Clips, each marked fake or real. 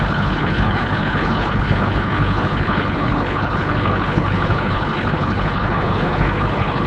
fake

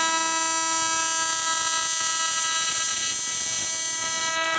real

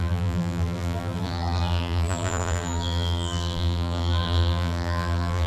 fake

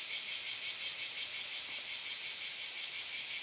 real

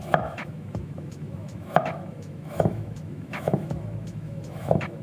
fake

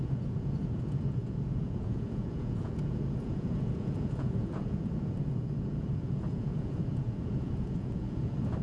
fake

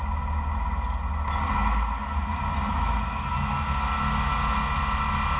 real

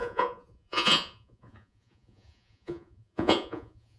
fake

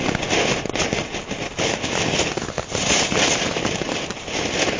real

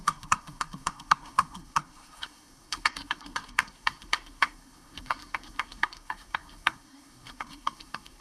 fake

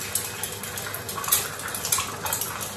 real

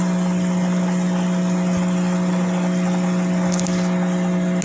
real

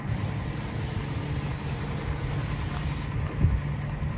real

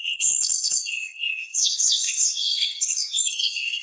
fake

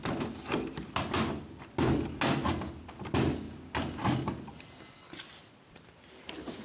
real